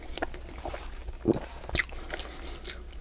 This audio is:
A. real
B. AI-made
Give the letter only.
A